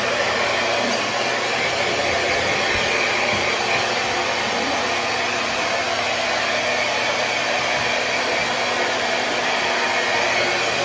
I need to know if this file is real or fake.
real